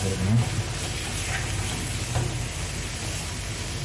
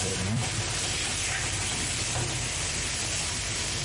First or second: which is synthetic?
second